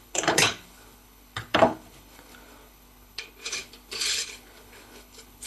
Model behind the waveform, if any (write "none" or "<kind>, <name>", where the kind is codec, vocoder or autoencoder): codec, HILCodec